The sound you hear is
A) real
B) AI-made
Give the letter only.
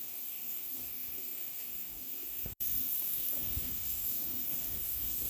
B